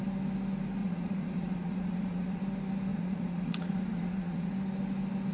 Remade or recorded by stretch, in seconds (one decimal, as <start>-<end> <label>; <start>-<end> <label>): 0.0-0.8 recorded; 0.8-2.4 remade; 2.4-2.9 recorded; 2.9-4.5 remade; 4.5-5.3 recorded